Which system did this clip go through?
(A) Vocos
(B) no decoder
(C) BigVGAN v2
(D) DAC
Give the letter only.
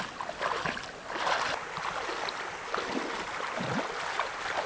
B